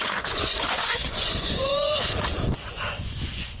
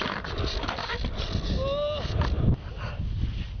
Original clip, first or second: second